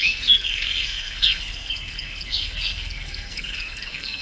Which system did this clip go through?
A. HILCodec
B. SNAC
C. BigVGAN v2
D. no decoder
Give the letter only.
B